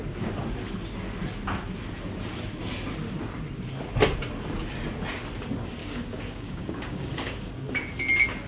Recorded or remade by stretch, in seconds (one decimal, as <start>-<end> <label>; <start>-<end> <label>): 0.0-5.8 recorded; 5.8-7.5 remade; 7.5-8.5 recorded